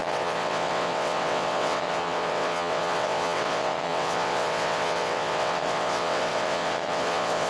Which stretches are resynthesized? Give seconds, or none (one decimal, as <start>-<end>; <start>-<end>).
0.0-7.5